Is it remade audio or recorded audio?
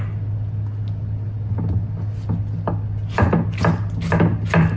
recorded